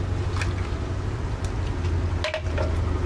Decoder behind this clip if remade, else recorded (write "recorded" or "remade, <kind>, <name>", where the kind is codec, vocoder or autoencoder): recorded